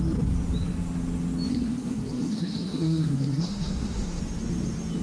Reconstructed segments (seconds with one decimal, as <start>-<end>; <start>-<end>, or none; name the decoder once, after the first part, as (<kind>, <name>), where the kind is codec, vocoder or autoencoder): 1.5-4.2 (codec, SNAC)